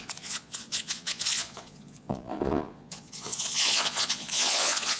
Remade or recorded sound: remade